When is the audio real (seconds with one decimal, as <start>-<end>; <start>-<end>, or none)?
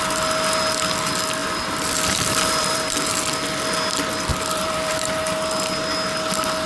0.0-1.4; 3.1-4.3; 5.2-6.7